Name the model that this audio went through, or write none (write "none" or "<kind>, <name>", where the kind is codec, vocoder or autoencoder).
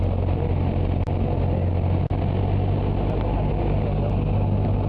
none